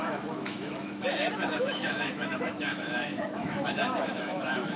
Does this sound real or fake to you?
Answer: fake